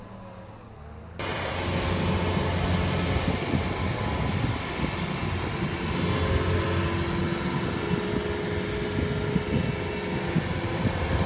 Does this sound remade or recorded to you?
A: recorded